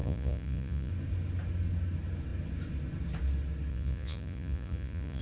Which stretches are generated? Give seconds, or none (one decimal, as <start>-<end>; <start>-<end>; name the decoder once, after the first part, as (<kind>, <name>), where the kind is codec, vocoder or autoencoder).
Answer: 0.0-0.9 (vocoder, Vocos); 3.7-5.2